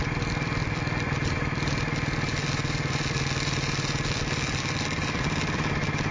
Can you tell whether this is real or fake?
fake